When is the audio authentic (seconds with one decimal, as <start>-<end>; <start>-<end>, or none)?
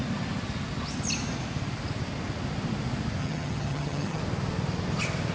0.0-3.2; 4.2-5.3